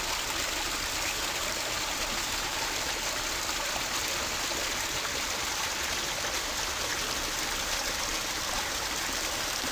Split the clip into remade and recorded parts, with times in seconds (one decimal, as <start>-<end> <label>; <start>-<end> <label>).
0.0-9.7 recorded